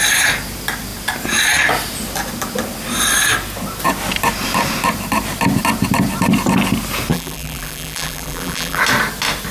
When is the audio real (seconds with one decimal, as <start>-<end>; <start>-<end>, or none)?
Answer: 0.0-7.1; 8.8-9.5